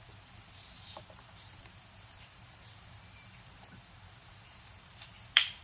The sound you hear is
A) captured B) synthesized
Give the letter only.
B